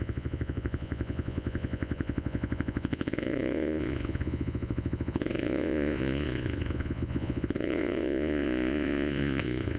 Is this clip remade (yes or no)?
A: yes